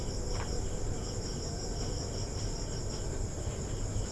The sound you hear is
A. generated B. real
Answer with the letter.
B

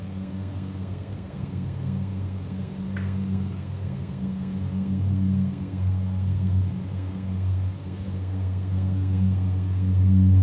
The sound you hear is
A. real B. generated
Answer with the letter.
B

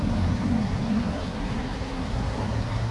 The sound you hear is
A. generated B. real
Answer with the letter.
A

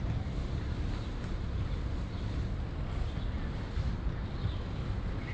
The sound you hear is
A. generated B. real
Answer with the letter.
B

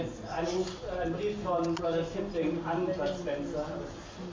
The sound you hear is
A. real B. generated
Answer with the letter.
A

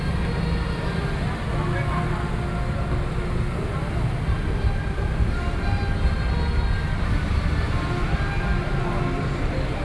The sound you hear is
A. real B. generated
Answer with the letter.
A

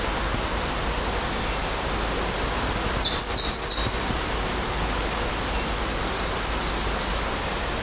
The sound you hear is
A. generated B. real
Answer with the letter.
B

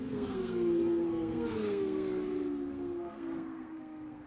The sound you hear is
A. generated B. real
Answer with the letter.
A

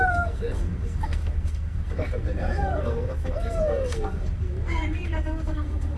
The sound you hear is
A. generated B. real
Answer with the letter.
A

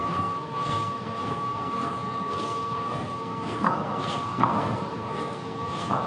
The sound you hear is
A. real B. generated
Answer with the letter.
B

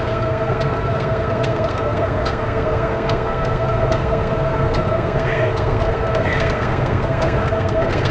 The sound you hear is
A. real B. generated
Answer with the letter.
B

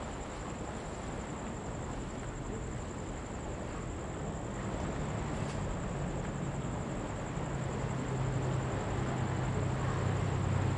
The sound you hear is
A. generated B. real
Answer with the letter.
B